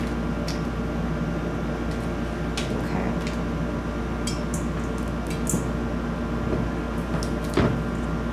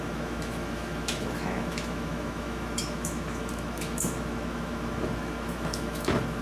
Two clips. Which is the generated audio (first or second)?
second